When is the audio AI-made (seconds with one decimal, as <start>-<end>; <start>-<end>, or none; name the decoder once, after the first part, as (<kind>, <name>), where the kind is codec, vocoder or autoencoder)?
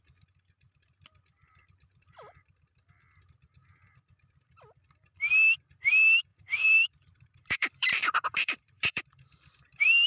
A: 6.3-9.0 (vocoder, BigVGAN v2)